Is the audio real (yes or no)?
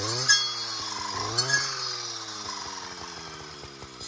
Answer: yes